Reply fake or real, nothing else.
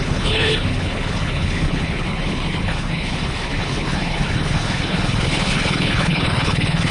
fake